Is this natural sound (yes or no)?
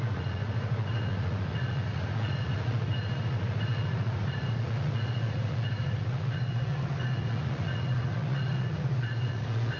no